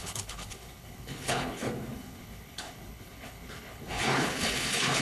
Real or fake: fake